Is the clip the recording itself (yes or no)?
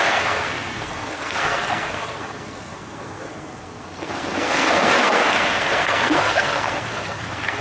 no